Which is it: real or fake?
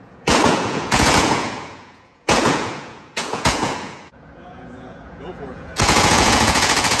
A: fake